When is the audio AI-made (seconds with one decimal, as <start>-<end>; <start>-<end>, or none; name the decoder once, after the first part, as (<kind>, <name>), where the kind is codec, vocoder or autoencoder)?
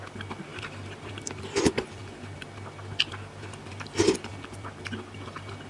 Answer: none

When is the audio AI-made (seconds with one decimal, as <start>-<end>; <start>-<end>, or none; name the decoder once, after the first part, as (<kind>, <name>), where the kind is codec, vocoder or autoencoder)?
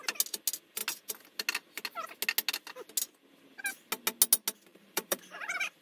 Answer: 4.7-5.2 (vocoder, BigVGAN v2)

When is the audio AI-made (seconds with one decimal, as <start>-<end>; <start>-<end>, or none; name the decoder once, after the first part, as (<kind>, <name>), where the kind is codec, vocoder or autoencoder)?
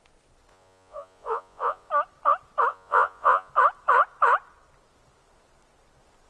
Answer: 0.5-1.9 (vocoder, Vocos); 2.7-3.5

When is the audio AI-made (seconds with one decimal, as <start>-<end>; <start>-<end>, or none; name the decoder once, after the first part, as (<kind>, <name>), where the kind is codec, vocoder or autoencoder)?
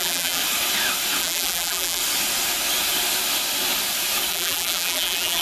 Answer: 0.0-0.4 (vocoder, BigVGAN v2); 1.2-2.0; 4.3-5.4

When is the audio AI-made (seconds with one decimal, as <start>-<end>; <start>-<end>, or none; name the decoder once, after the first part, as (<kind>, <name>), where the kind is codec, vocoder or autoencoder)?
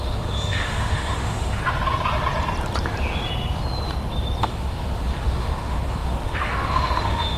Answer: 0.0-1.6 (autoencoder, DAC-VAE); 4.4-7.4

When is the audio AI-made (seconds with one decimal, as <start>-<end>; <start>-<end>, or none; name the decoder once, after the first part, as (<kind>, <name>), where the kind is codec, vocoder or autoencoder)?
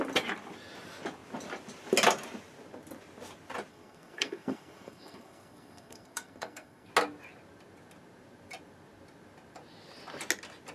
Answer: 3.7-6.9 (codec, SNAC)